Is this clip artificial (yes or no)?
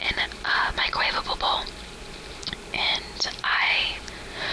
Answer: no